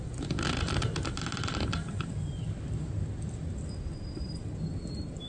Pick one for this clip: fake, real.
real